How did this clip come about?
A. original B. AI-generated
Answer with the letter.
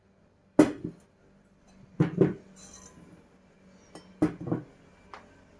A